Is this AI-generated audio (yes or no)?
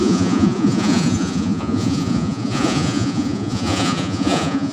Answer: yes